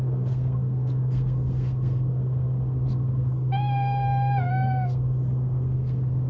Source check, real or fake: fake